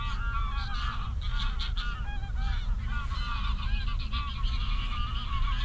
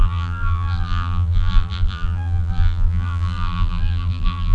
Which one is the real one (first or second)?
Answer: first